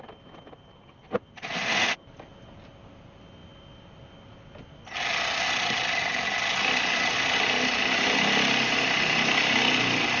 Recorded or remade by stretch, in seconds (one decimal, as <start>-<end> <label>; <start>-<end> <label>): 0.0-10.2 recorded